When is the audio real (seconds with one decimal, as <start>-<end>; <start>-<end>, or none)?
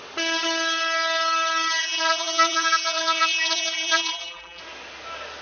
0.0-1.8; 4.6-5.4